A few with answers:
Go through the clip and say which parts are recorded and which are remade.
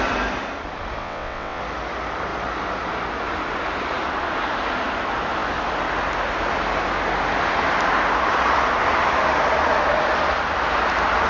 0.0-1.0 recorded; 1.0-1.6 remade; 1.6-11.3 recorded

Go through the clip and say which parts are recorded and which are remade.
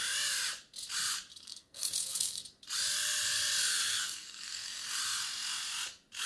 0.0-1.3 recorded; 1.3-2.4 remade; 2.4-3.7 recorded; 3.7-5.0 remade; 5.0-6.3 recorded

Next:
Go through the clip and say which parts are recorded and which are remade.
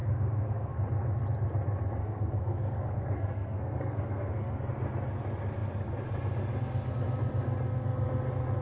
0.0-0.7 remade; 0.7-2.0 recorded; 2.0-4.6 remade; 4.6-8.6 recorded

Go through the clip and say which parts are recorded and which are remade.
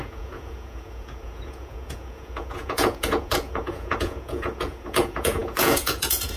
0.0-6.4 remade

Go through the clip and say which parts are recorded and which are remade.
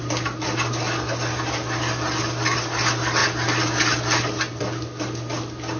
0.0-5.8 recorded